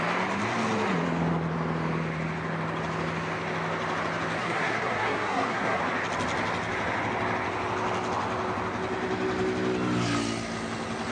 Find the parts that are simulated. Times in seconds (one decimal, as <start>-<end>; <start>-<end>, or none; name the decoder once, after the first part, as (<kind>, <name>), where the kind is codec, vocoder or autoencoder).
4.4-5.8 (codec, SNAC)